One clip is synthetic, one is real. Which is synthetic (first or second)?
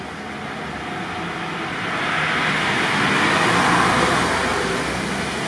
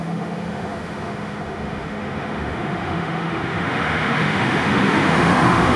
second